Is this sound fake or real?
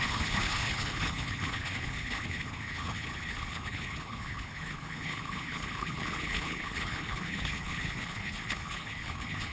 fake